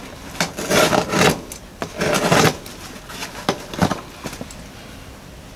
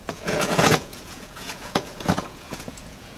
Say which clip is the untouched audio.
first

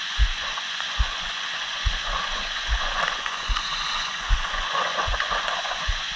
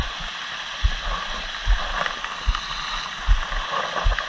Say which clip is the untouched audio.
second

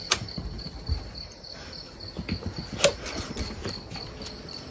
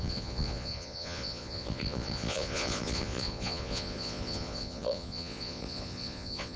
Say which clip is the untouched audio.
first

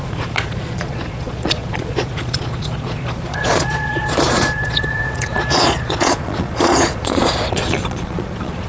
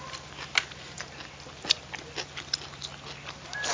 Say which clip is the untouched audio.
second